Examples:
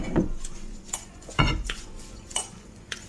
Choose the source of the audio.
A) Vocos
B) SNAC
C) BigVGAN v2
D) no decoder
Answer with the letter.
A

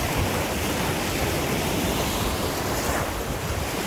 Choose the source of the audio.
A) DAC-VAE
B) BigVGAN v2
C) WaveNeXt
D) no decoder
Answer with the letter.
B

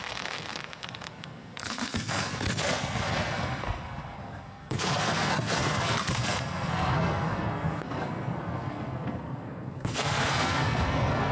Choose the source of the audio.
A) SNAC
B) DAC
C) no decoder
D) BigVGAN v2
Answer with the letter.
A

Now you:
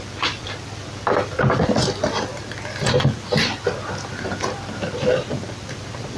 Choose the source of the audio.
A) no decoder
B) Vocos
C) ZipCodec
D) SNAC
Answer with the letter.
A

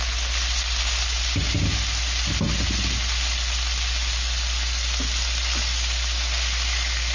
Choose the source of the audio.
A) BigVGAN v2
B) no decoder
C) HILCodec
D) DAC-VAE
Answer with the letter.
B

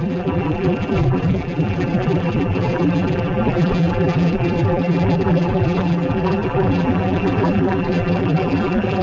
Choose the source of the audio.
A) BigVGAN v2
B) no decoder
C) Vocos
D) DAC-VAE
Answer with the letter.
A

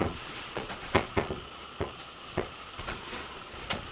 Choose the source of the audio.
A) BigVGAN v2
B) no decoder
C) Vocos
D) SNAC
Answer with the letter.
C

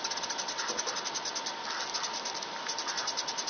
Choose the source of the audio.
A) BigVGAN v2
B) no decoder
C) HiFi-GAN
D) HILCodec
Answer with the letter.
B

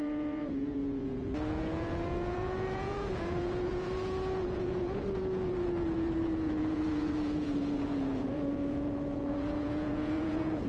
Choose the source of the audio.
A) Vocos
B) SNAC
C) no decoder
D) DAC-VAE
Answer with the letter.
A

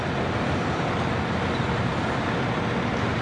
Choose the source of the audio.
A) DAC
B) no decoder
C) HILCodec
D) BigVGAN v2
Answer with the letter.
B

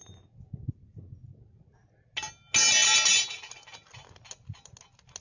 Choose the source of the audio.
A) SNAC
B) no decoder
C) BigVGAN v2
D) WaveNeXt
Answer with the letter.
B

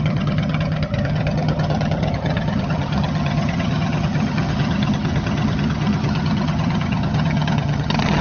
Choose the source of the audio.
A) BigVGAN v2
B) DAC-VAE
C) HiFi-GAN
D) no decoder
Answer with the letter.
C